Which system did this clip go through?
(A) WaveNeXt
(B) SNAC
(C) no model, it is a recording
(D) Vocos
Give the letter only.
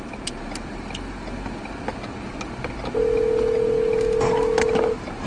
C